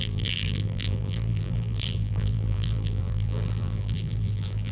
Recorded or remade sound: remade